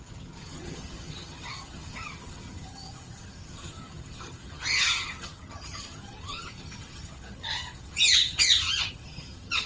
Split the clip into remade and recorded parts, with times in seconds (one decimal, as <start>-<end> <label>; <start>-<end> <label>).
0.0-9.7 remade